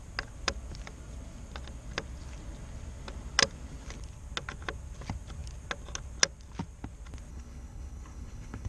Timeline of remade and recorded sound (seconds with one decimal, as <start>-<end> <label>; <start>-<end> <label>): 0.0-7.3 recorded; 7.3-8.7 remade